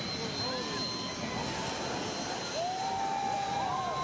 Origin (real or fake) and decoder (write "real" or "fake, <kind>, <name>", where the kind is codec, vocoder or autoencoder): real